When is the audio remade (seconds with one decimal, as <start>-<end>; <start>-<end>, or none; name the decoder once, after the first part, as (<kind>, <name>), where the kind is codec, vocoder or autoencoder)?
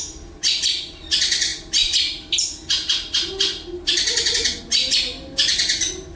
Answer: none